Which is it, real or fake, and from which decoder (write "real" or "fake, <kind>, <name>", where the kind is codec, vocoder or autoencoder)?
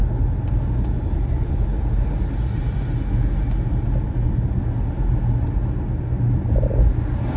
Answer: real